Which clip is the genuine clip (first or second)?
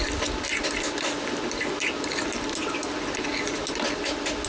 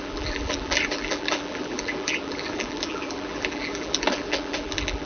first